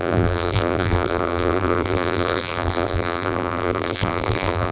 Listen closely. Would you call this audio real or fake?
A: fake